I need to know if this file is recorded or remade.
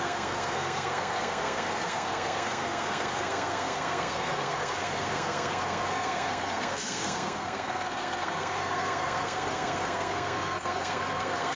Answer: remade